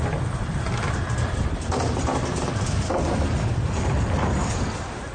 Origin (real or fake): real